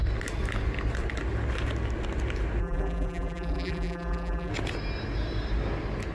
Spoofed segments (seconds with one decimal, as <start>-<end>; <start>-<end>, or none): 2.6-4.5